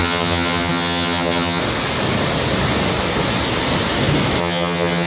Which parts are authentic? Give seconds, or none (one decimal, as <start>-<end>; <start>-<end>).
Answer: 1.6-4.4